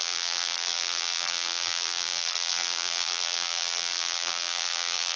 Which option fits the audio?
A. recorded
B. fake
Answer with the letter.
B